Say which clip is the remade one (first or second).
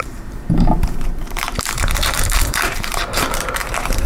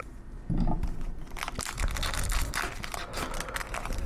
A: first